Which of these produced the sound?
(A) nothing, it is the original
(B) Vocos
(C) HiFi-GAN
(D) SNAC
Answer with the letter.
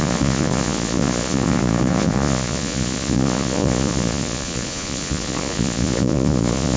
B